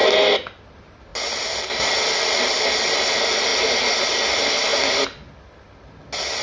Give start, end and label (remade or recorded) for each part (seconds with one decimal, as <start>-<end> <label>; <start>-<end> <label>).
0.0-6.4 recorded